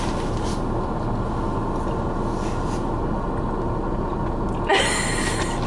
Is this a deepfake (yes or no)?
no